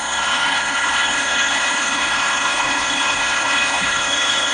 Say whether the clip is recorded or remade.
remade